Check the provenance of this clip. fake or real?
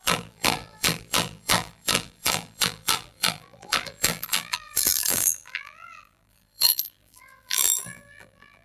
fake